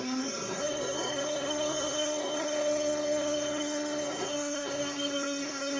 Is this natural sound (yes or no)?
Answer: no